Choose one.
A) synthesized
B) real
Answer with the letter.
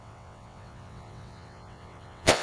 A